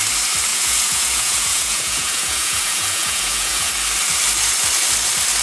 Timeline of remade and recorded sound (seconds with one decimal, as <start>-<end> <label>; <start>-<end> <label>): 0.0-0.5 recorded; 0.5-3.7 remade; 3.7-5.4 recorded